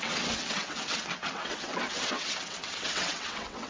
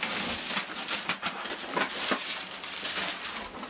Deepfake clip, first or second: first